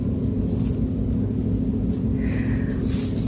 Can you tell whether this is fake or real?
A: real